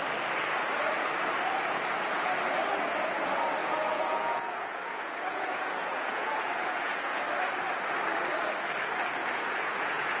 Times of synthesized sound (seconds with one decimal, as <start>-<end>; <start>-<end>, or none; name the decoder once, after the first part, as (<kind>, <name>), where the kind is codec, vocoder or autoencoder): 3.6-7.2 (vocoder, Vocos); 9.2-10.2